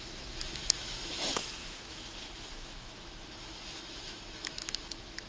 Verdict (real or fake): fake